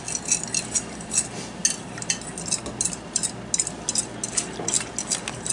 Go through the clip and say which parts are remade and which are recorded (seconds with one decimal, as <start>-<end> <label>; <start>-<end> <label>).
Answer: 0.0-5.5 recorded